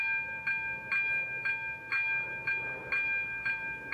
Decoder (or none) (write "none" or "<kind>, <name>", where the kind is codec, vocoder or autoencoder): none